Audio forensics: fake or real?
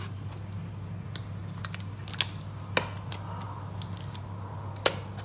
real